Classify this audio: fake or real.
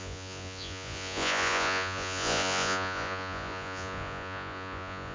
fake